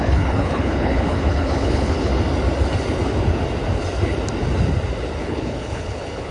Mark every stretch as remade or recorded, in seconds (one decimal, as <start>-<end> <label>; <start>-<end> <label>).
0.0-2.1 remade; 2.1-5.2 recorded; 5.2-6.3 remade